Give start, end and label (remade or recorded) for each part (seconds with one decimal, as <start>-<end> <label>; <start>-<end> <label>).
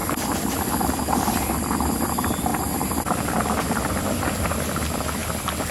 0.0-5.7 recorded